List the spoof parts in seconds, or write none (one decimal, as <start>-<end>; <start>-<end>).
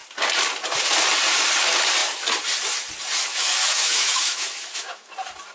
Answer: 3.3-5.1